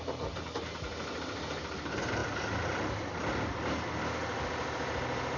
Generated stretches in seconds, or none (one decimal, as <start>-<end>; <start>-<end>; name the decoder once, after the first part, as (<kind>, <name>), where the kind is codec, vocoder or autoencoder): none